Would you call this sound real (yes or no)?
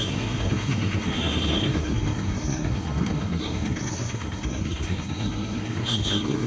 no